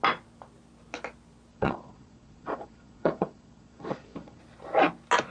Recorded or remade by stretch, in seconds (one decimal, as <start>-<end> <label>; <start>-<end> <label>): 0.0-1.5 recorded; 1.5-4.4 remade; 4.4-5.3 recorded